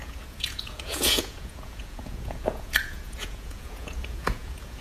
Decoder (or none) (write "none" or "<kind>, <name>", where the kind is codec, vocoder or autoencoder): vocoder, Vocos